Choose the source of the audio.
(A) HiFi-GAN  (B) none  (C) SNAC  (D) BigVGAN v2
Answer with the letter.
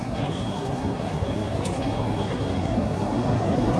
C